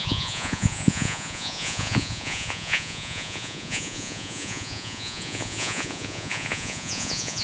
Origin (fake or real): fake